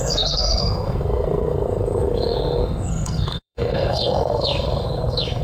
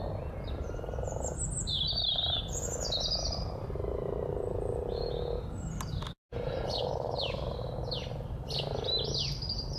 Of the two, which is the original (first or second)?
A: second